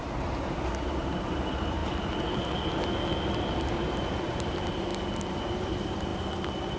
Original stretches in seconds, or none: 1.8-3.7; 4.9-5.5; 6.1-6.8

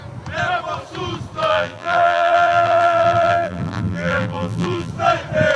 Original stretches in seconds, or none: 0.0-1.5; 4.9-5.6

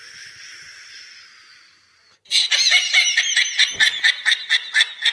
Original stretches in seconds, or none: 0.0-5.1

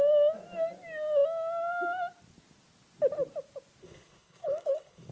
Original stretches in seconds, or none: 0.0-3.8

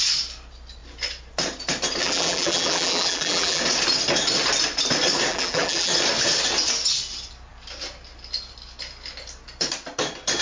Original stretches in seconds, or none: 0.0-2.0; 3.6-5.3; 5.9-10.4